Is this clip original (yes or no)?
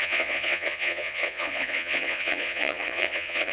no